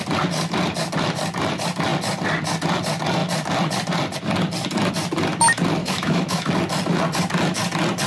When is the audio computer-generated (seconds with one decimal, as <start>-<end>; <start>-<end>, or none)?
5.8-6.5